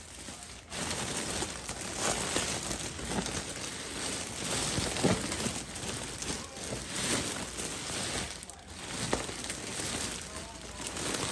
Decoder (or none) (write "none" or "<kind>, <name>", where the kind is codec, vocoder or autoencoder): none